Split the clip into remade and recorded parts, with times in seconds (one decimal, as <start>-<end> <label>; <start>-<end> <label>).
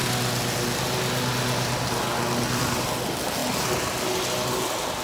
0.0-5.0 recorded